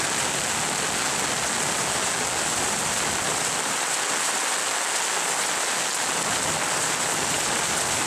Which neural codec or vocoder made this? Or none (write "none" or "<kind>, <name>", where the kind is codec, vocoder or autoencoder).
none